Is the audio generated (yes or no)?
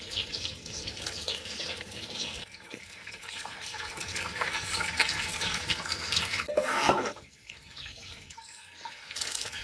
yes